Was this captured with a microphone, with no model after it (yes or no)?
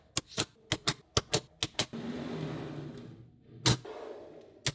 yes